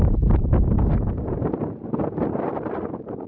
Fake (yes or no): no